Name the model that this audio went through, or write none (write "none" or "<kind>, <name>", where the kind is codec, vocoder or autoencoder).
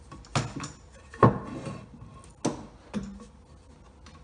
none